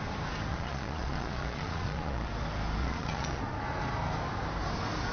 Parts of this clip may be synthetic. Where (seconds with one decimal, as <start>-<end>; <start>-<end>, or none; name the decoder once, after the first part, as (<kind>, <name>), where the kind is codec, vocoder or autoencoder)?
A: 0.5-2.3 (vocoder, Vocos); 2.8-3.4